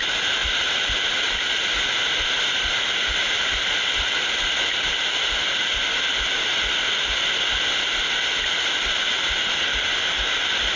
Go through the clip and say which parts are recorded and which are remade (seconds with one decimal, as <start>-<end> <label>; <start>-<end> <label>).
0.0-10.8 recorded